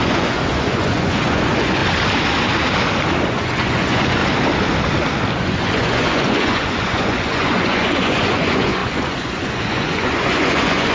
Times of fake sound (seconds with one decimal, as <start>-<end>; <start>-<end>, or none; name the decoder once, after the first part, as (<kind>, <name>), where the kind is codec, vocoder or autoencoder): 0.0-1.8 (vocoder, Vocos); 3.3-4.2; 5.4-10.9